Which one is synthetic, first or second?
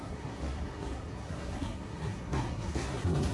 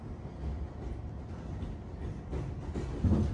first